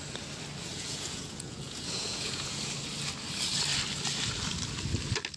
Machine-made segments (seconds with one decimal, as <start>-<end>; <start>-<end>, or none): 0.7-2.6